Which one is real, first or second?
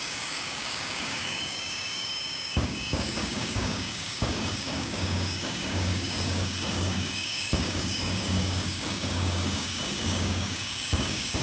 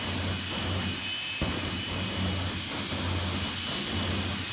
second